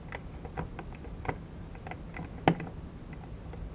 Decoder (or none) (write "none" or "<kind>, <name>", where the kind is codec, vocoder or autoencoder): none